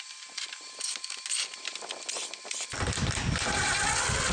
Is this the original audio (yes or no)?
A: yes